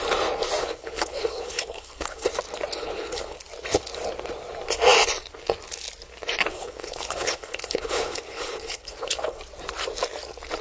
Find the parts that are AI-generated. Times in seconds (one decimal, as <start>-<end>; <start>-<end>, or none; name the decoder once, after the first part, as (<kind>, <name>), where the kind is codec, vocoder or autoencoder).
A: 0.6-2.3 (codec, HILCodec); 2.8-3.4; 6.5-9.4